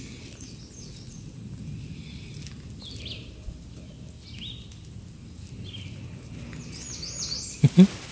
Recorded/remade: recorded